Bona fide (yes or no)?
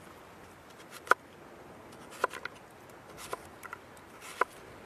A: yes